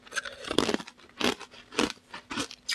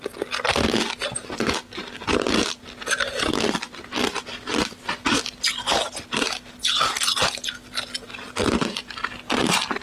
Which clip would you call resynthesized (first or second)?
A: first